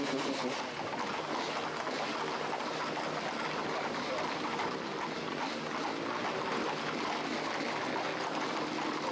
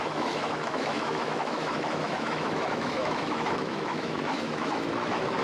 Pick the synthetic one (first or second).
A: second